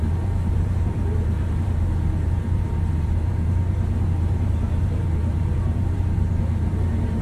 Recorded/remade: remade